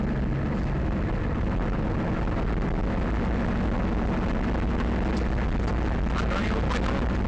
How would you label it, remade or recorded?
recorded